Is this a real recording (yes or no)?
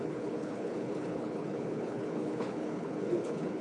no